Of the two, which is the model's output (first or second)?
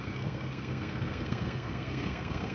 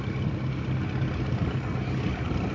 first